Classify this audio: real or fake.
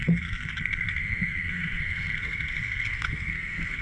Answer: fake